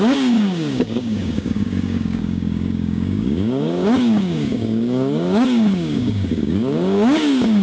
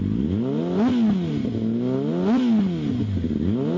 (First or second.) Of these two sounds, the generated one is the first